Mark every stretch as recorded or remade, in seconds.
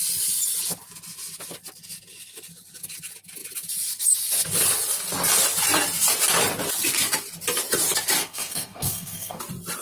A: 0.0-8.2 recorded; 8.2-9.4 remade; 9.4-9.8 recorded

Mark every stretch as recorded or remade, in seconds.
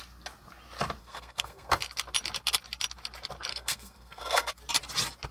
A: 0.0-1.0 recorded; 1.0-1.7 remade; 1.7-3.5 recorded; 3.5-4.5 remade; 4.5-5.3 recorded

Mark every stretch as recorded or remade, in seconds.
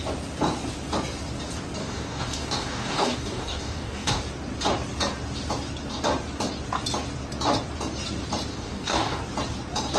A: 0.0-1.8 recorded; 1.8-4.2 remade; 4.2-8.5 recorded; 8.5-9.2 remade; 9.2-10.0 recorded